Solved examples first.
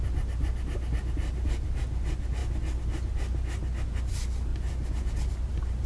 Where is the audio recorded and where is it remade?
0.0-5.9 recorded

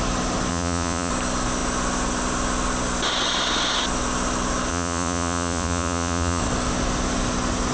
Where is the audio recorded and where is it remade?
0.0-0.5 recorded; 0.5-1.1 remade; 1.1-4.7 recorded; 4.7-6.4 remade; 6.4-7.7 recorded

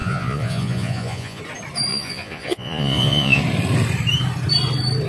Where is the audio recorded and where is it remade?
0.0-1.4 remade; 1.4-1.9 recorded; 1.9-3.4 remade; 3.4-5.1 recorded